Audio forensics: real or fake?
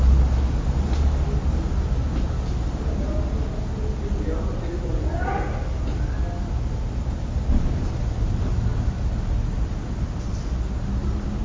real